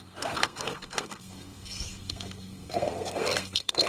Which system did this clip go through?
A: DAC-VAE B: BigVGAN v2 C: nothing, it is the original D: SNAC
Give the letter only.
D